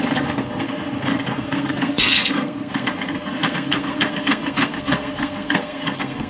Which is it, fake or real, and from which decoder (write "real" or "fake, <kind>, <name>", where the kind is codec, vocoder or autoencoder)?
fake, codec, SNAC